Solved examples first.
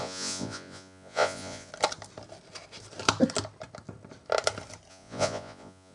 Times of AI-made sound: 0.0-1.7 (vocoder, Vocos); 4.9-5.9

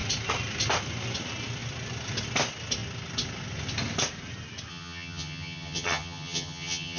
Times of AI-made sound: 4.7-7.0 (vocoder, HiFi-GAN)

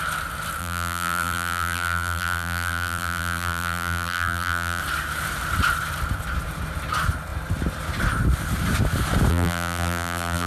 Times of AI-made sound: 0.6-4.8 (vocoder, BigVGAN v2); 9.3-10.5